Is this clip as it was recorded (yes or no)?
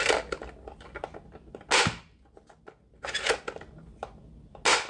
yes